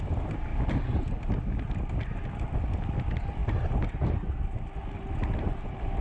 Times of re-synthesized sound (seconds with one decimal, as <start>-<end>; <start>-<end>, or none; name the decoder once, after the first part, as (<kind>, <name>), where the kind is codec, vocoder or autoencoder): 0.0-0.5 (vocoder, BigVGAN v2); 1.9-3.4; 5.2-6.0